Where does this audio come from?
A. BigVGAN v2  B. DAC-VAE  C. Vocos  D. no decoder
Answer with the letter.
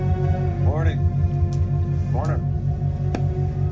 D